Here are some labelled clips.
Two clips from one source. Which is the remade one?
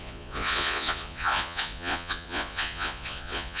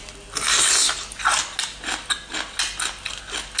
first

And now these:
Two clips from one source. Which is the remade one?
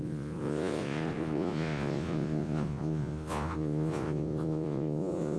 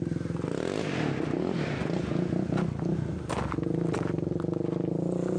first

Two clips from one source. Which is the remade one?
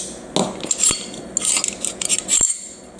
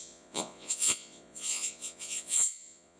second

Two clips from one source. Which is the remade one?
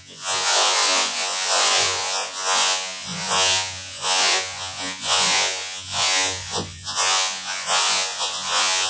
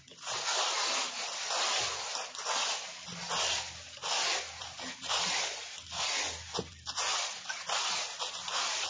first